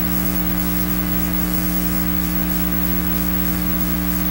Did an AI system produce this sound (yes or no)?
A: no